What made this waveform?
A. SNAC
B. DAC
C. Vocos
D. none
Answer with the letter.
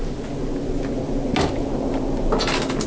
D